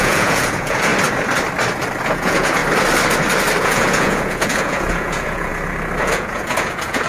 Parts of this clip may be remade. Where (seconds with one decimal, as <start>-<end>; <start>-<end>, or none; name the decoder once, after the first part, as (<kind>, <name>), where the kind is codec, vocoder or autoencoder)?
0.0-0.9 (vocoder, Vocos); 2.0-2.6; 3.6-5.5; 6.0-7.1